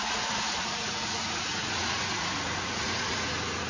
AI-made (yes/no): yes